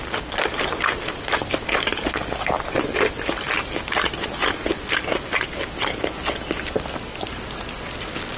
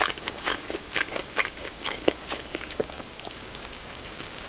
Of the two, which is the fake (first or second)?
second